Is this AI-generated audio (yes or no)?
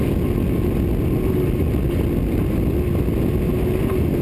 no